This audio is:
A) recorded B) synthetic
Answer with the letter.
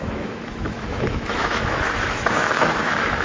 B